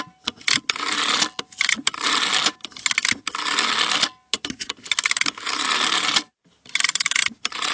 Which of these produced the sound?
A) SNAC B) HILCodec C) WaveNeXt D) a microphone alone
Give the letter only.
D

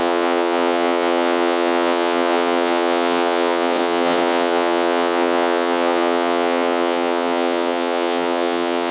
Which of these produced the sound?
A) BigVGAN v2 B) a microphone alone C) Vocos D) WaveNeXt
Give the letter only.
D